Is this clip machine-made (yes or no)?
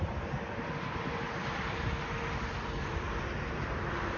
yes